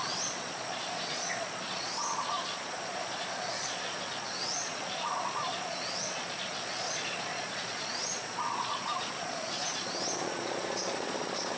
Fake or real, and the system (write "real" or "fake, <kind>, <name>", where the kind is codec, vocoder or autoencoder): fake, vocoder, Vocos